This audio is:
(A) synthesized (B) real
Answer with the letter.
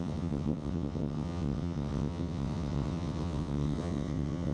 A